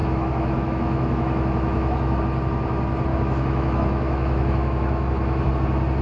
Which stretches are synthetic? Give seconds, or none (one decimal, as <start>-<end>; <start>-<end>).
0.0-2.2; 3.1-5.5